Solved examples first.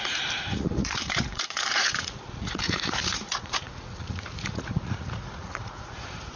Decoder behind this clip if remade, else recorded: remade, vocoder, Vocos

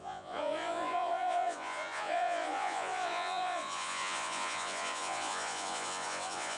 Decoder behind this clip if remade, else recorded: remade, vocoder, Vocos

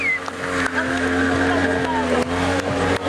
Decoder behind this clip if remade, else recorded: recorded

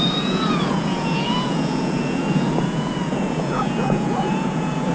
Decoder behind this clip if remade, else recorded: remade, vocoder, Vocos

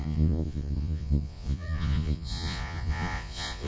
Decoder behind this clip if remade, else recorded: remade, vocoder, Vocos